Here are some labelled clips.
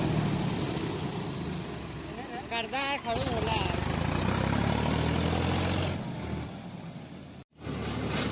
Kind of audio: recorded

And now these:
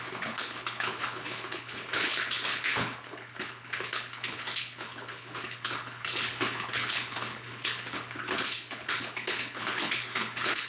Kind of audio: remade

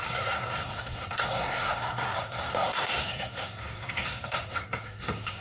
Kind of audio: remade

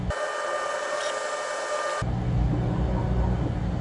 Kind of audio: recorded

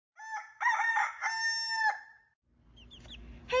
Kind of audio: recorded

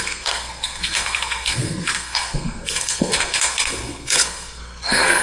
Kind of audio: remade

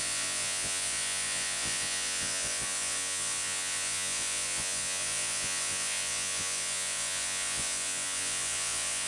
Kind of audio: remade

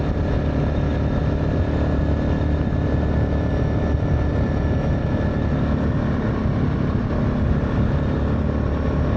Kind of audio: recorded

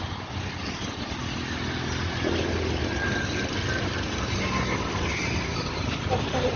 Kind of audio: recorded